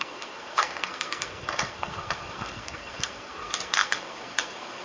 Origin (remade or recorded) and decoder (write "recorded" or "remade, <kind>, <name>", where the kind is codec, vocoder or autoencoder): remade, codec, SNAC